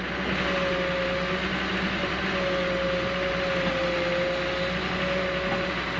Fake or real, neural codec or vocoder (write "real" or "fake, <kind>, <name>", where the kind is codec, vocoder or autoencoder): real